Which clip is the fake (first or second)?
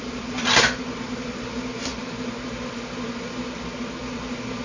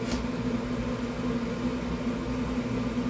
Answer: first